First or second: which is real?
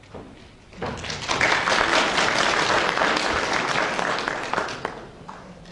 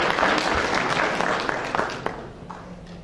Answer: second